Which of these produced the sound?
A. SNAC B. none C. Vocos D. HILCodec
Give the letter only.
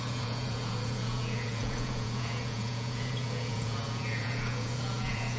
C